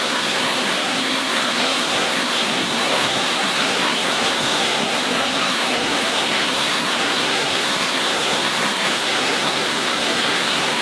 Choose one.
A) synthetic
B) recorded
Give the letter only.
A